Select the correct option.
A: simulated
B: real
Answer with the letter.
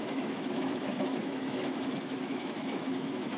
A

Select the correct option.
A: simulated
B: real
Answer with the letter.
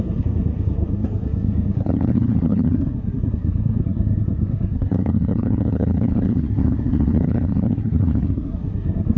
A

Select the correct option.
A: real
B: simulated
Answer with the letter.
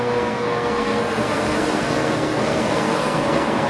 B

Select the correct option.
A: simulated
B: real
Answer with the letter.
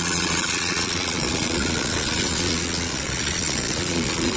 A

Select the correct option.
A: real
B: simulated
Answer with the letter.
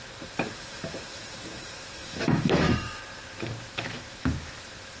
B